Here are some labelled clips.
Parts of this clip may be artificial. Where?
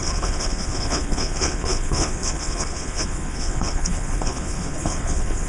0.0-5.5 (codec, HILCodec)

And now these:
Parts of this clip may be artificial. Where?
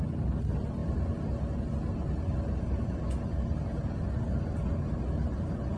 none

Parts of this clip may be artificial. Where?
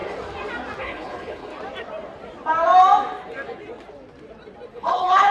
0.8-1.5 (codec, HILCodec); 4.7-5.3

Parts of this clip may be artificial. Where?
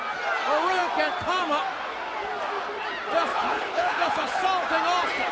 3.3-4.4 (codec, HILCodec)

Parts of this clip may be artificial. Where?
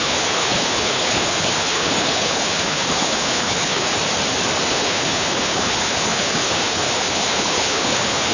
0.0-3.9 (codec, HILCodec); 4.7-8.3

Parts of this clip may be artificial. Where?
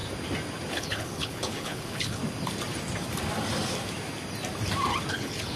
0.7-2.2 (codec, HILCodec); 5.1-5.6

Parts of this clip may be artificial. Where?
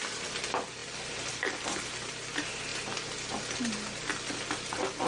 none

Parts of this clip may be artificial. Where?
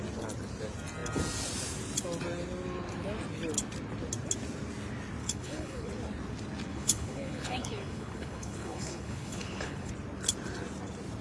5.2-5.9 (codec, HILCodec); 6.7-9.9